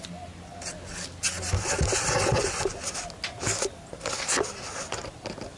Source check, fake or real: real